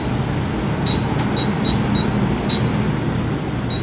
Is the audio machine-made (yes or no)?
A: no